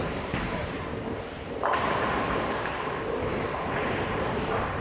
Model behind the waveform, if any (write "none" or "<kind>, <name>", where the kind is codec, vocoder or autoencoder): vocoder, BigVGAN v2